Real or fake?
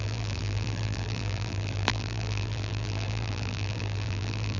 fake